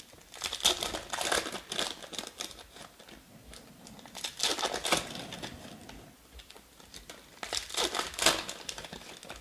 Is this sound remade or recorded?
recorded